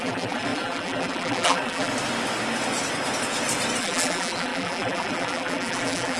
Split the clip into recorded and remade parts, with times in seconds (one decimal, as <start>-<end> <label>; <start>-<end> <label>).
0.0-1.9 remade; 1.9-3.8 recorded; 3.8-6.2 remade